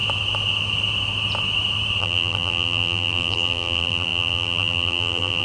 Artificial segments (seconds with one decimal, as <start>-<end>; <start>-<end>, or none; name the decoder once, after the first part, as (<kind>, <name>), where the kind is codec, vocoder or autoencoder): 2.0-5.4 (vocoder, BigVGAN v2)